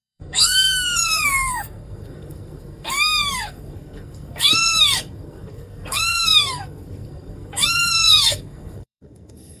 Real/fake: fake